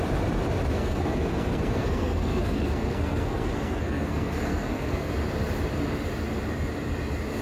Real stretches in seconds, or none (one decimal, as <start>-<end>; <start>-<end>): 0.0-0.7; 5.1-7.4